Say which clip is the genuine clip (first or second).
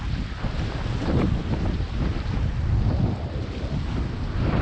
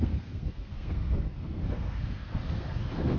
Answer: first